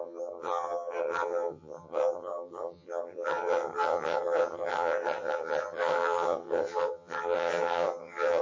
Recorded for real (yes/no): no